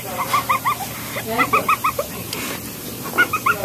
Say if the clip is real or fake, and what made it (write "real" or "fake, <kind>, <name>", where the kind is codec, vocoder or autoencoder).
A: real